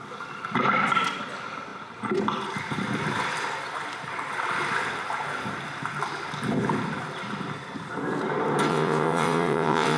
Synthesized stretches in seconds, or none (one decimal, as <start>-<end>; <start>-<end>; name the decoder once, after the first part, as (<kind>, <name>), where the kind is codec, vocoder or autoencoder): 8.7-10.0 (vocoder, WaveNeXt)